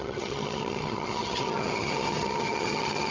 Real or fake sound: fake